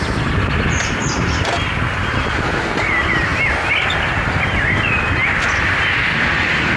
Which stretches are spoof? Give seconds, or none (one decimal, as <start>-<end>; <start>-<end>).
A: none